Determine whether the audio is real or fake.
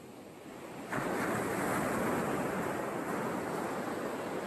real